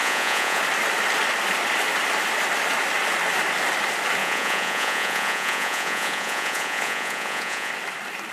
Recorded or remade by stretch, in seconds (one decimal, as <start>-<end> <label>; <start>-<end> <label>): 0.0-0.6 remade; 0.6-4.2 recorded; 4.2-7.7 remade; 7.7-8.3 recorded